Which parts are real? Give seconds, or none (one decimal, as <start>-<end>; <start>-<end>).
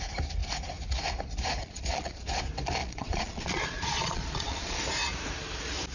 0.0-1.6; 2.3-2.8; 4.8-5.9